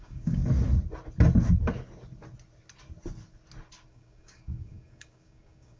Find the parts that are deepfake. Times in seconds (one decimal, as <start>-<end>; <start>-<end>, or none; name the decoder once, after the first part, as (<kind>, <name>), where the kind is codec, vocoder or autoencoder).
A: 0.0-0.4 (codec, DAC); 3.9-5.8

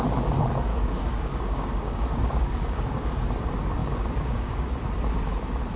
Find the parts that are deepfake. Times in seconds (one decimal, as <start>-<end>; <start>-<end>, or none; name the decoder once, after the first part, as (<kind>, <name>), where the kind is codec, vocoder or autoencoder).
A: 0.7-3.1 (codec, DAC); 3.8-4.7

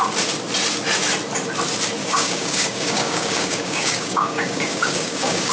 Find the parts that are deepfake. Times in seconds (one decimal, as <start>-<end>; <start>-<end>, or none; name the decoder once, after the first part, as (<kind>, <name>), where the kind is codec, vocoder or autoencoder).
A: 2.0-5.5 (codec, DAC)

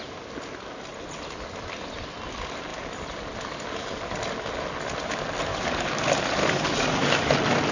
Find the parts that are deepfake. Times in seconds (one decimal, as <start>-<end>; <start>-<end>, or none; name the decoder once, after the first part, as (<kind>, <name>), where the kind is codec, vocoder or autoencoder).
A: 5.5-6.0 (codec, DAC); 6.4-7.3

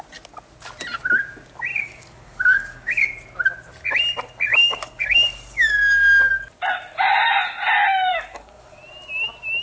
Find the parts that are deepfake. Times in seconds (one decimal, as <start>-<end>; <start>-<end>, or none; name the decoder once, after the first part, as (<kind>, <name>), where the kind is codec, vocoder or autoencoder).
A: 1.7-3.1 (codec, DAC); 4.5-6.3; 8.1-8.8

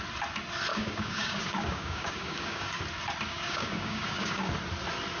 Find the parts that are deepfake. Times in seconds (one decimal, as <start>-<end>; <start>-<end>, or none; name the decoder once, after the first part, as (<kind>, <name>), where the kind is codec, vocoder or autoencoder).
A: 0.7-2.8 (codec, DAC); 3.3-4.5